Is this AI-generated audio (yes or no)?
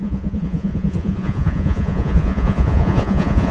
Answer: yes